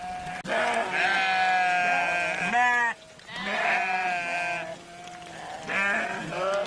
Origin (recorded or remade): recorded